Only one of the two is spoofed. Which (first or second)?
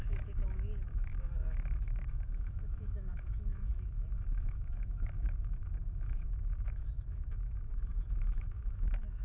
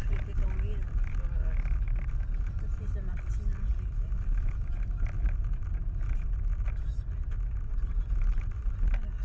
first